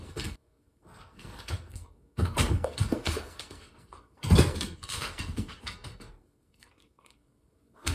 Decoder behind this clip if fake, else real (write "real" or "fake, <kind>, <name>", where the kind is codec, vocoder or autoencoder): fake, codec, SNAC